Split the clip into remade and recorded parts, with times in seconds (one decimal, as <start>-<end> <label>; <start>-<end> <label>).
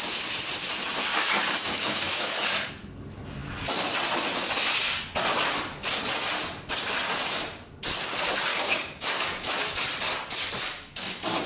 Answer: 0.0-1.1 recorded; 1.1-2.7 remade; 2.7-8.5 recorded; 8.5-9.8 remade; 9.8-11.5 recorded